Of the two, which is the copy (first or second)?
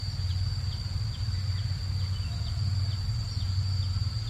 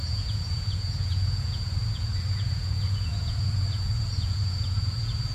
second